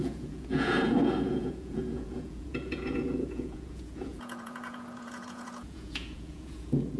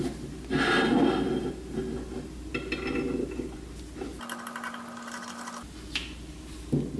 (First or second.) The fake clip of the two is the first